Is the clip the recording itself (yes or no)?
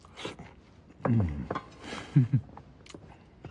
yes